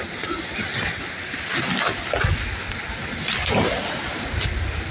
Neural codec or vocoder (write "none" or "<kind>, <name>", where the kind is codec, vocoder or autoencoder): none